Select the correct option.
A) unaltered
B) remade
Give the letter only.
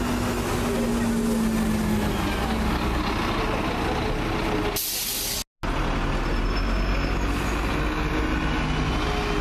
A